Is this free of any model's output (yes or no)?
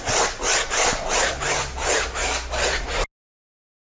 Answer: yes